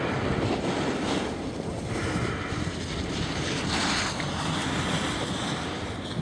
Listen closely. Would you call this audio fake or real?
real